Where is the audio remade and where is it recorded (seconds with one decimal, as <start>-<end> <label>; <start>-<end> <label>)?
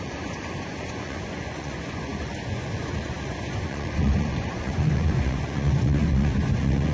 0.0-6.9 remade